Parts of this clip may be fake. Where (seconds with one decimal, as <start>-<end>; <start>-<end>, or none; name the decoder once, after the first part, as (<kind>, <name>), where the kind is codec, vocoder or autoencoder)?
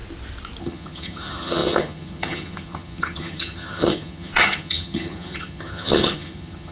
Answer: 0.6-6.7 (vocoder, HiFi-GAN)